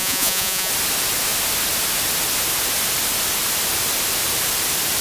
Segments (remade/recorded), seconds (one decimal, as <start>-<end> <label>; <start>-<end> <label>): 0.0-0.7 remade; 0.7-5.0 recorded